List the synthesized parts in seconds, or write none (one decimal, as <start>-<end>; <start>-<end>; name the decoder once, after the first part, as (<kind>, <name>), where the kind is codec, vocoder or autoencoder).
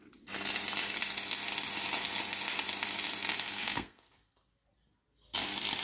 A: 3.3-4.1 (codec, SNAC)